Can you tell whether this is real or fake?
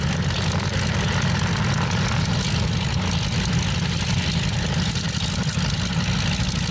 real